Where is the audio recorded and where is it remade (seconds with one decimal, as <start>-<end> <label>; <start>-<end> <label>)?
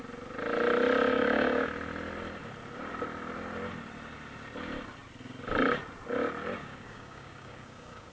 0.0-1.1 recorded; 1.1-1.7 remade; 1.7-6.6 recorded; 6.6-8.1 remade